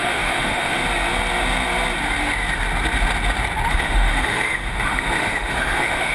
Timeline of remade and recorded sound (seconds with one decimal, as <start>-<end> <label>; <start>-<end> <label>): 0.0-0.8 remade; 0.8-3.7 recorded; 3.7-6.1 remade